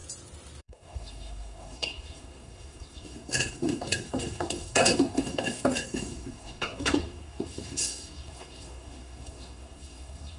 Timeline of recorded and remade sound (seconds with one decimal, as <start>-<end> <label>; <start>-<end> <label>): 0.0-0.6 recorded; 0.6-10.4 remade

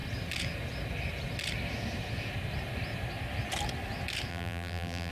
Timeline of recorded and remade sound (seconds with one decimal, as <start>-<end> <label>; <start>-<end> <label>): 0.0-4.3 recorded; 4.3-5.1 remade

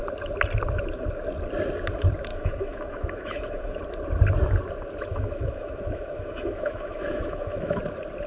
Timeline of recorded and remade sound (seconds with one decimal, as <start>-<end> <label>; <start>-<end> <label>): 0.0-2.3 recorded; 2.3-3.8 remade; 3.8-5.1 recorded; 5.1-7.8 remade; 7.8-8.3 recorded